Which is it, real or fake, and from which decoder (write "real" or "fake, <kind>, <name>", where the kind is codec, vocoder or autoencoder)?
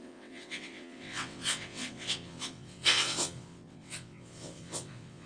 fake, vocoder, WaveNeXt